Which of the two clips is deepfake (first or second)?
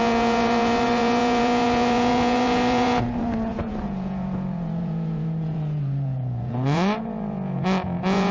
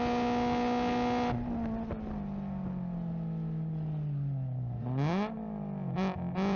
first